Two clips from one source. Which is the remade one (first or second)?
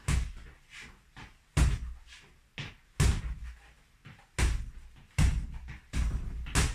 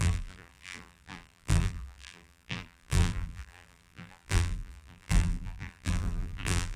second